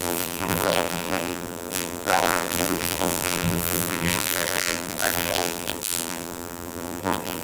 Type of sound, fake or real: fake